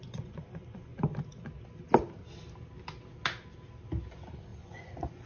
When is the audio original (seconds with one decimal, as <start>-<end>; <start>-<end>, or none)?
0.9-4.1